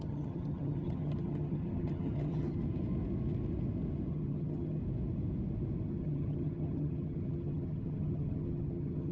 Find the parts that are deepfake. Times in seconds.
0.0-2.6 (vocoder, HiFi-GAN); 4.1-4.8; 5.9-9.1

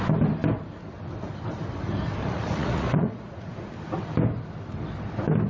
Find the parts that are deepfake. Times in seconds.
2.2-3.7 (vocoder, Vocos)

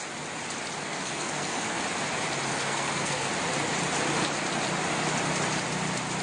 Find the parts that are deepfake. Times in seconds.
0.8-1.8 (codec, SNAC); 2.5-3.3